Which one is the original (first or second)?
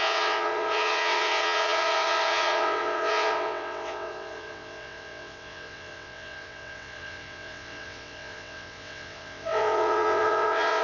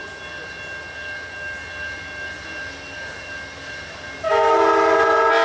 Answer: second